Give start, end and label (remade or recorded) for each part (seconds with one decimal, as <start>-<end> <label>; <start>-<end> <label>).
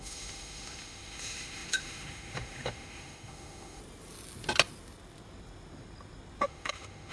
0.0-3.8 remade; 3.8-6.4 recorded; 6.4-7.1 remade